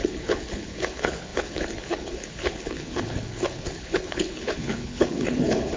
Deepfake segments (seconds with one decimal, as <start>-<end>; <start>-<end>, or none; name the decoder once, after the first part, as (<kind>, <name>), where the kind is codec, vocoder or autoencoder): 0.0-5.8 (codec, HILCodec)